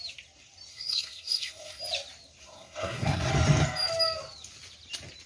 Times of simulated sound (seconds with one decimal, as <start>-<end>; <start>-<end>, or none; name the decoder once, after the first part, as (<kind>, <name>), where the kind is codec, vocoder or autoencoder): 0.7-1.8 (codec, SNAC); 2.4-3.3